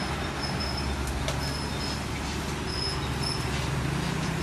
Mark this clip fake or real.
real